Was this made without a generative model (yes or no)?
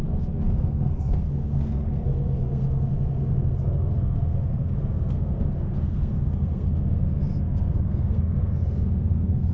no